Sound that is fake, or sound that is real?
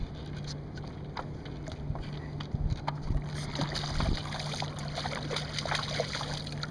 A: real